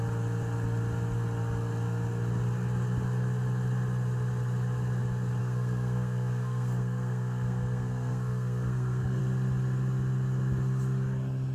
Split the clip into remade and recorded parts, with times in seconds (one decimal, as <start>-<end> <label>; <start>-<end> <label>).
0.0-5.4 recorded; 5.4-9.2 remade; 9.2-11.5 recorded